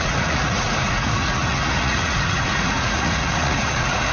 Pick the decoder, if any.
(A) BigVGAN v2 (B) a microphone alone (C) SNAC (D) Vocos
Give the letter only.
D